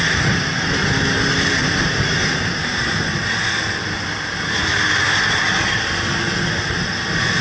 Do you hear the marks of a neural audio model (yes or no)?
no